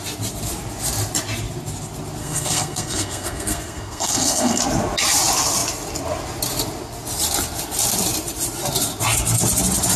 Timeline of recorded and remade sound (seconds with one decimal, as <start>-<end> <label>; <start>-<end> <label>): 0.0-2.2 recorded; 2.2-4.6 remade; 4.6-10.0 recorded